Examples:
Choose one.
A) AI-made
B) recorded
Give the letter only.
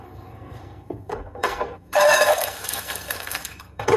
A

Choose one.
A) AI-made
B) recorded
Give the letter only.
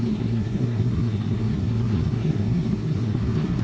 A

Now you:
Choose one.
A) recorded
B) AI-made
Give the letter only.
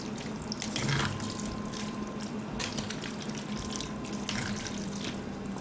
A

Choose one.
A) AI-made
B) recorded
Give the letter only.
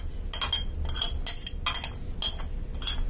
B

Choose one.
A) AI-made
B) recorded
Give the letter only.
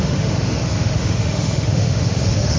A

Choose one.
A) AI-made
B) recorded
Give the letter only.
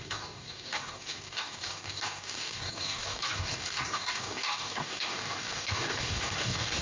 A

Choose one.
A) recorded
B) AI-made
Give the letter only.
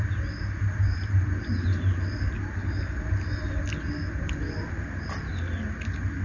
A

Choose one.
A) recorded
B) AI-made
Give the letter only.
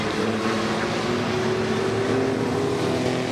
A